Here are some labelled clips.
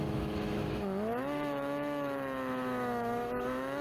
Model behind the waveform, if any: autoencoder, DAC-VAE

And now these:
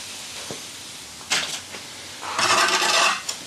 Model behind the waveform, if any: none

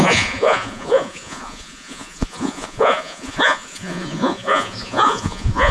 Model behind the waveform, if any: vocoder, Vocos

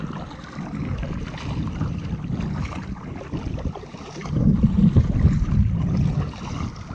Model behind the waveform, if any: none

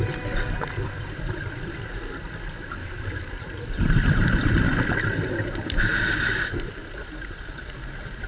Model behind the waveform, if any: vocoder, BigVGAN v2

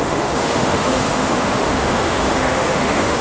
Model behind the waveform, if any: autoencoder, DAC-VAE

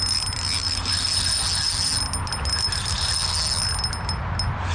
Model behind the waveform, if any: none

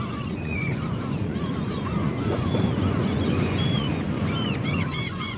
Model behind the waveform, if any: vocoder, Vocos